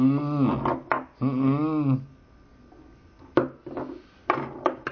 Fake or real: real